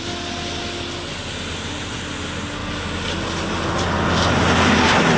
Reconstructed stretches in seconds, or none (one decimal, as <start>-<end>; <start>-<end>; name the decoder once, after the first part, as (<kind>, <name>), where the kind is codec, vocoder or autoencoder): none